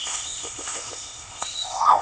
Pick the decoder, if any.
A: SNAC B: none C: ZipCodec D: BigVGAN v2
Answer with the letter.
C